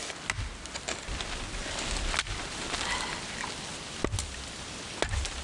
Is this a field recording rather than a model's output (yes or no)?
yes